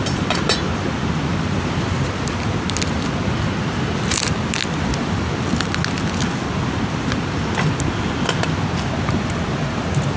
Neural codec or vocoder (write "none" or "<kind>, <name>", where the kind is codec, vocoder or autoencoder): none